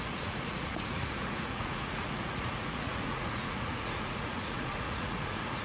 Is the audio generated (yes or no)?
yes